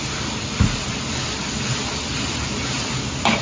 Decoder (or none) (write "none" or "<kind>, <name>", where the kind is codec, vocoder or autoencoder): none